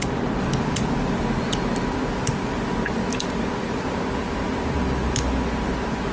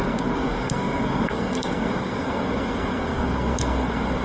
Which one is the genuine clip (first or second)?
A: first